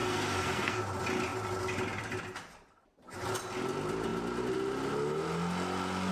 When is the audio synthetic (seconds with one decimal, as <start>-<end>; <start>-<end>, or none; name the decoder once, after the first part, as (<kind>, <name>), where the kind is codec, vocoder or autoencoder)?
0.0-0.8 (codec, SNAC)

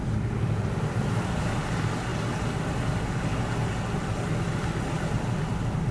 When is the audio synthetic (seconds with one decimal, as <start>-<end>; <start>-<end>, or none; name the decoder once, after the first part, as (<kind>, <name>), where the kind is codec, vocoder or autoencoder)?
none